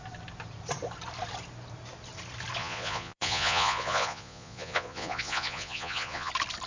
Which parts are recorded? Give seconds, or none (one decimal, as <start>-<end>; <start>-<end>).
0.0-2.6; 6.3-6.7